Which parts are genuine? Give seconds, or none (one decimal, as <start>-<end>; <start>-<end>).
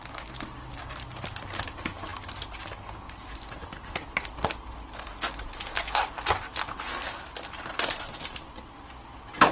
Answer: 0.0-9.5